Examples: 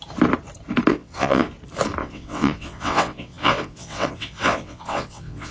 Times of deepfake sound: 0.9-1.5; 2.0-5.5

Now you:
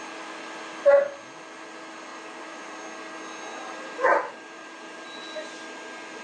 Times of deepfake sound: 2.1-2.8; 3.5-5.2

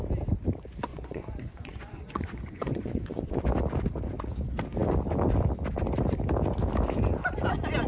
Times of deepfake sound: 0.9-3.4

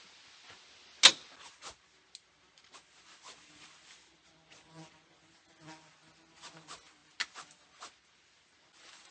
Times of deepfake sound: none